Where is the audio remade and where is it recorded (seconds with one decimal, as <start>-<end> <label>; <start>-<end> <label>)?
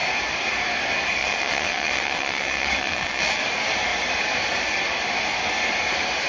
0.0-1.2 recorded; 1.2-3.4 remade; 3.4-6.3 recorded